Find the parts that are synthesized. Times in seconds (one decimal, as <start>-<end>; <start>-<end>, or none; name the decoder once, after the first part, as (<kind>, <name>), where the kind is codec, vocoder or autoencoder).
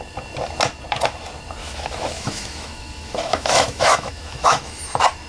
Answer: 1.6-4.8 (autoencoder, DAC-VAE)